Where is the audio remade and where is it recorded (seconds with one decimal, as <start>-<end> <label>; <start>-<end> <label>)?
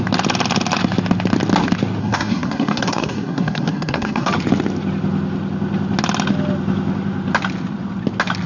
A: 0.0-2.0 recorded; 2.0-4.3 remade; 4.3-8.5 recorded